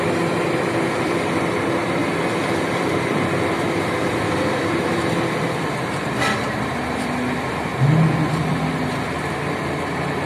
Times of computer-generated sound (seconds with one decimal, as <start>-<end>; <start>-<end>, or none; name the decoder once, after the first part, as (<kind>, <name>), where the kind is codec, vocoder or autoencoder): 0.0-2.0 (vocoder, BigVGAN v2); 2.6-7.7; 8.4-10.3